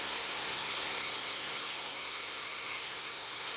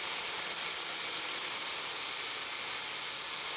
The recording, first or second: second